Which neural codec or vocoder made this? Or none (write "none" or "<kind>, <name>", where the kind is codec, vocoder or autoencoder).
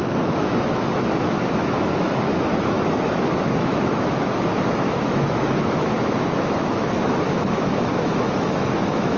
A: autoencoder, DAC-VAE